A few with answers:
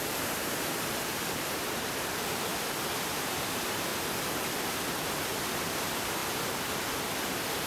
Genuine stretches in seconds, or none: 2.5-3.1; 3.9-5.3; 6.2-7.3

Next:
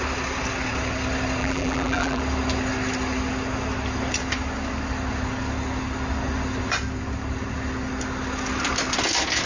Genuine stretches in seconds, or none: 0.0-1.4; 2.2-9.5

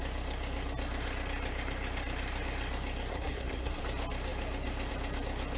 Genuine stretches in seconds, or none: 0.0-3.1; 3.8-5.6